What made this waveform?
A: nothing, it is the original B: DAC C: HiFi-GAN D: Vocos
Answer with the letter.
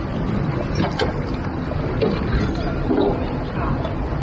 A